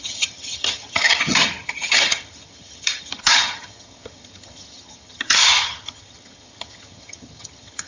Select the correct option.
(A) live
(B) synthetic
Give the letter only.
B